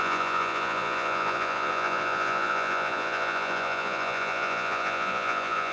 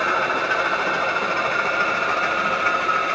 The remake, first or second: first